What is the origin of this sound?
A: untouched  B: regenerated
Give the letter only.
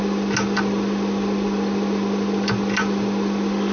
A